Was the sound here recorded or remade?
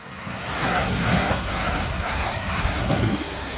remade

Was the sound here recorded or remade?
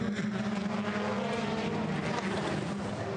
recorded